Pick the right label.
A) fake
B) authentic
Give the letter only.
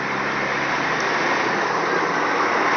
B